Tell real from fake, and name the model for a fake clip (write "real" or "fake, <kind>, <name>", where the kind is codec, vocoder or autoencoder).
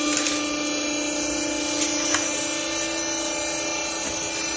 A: real